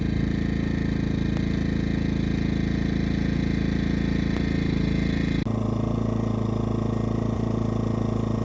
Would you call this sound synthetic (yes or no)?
no